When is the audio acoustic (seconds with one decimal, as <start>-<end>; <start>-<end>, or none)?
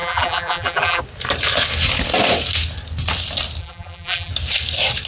1.0-3.6; 4.3-5.1